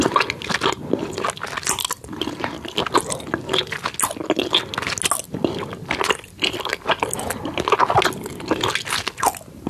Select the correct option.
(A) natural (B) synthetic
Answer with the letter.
A